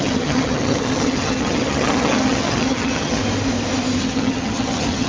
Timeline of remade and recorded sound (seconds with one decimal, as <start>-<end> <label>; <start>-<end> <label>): 0.0-3.2 remade; 3.2-4.0 recorded; 4.0-5.1 remade